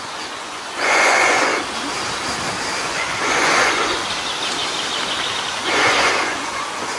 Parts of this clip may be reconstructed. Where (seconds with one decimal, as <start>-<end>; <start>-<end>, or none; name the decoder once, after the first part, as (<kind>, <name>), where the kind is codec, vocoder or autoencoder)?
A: 0.0-1.5 (vocoder, Vocos); 2.8-4.0; 5.5-7.0